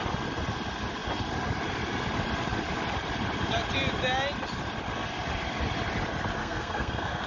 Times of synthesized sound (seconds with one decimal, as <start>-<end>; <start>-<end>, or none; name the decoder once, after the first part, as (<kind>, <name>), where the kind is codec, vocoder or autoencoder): 6.4-7.3 (codec, SNAC)